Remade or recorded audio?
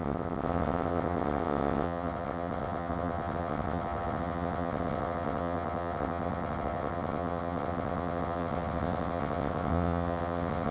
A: remade